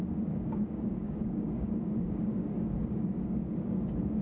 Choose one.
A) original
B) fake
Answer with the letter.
B